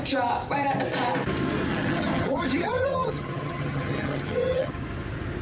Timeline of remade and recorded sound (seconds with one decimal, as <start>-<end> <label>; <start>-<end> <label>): 0.0-1.7 recorded; 1.7-4.7 remade; 4.7-5.4 recorded